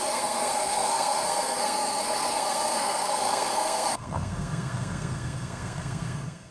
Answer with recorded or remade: remade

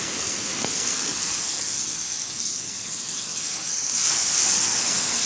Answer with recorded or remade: remade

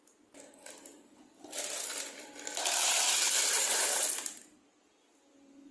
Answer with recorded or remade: recorded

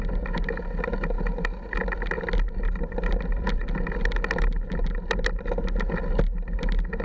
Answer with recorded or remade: recorded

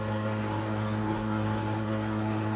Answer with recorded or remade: remade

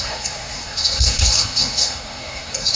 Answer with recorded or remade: remade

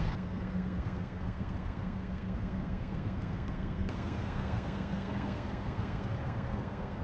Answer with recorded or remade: remade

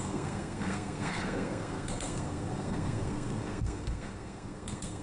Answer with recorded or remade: remade